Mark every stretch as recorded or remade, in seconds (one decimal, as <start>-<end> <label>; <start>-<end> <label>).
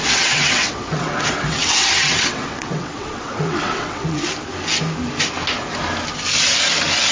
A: 0.0-4.3 remade; 4.3-7.1 recorded